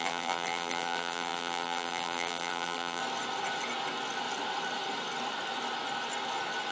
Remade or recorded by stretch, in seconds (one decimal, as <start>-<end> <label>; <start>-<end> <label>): 0.0-3.0 remade; 3.0-6.7 recorded